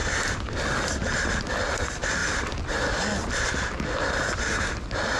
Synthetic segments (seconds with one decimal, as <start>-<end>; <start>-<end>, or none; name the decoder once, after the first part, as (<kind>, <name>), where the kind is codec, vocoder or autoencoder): none